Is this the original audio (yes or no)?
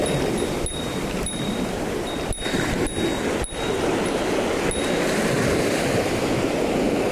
yes